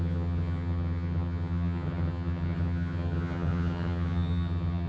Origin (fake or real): fake